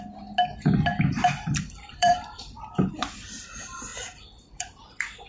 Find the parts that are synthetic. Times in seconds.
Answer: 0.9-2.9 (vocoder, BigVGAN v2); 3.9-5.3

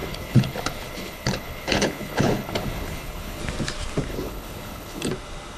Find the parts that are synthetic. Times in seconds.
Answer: 0.0-3.4 (codec, HILCodec); 4.1-5.1